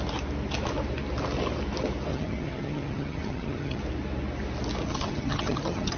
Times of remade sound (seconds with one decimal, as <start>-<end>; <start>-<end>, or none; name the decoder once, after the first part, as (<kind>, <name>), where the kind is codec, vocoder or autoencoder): 2.1-3.8 (vocoder, HiFi-GAN); 4.8-6.0